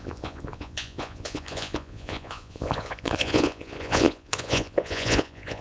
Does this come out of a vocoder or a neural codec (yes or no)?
yes